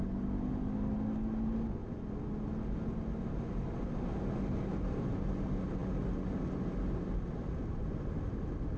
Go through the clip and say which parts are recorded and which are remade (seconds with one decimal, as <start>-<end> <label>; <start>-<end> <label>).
0.0-8.8 recorded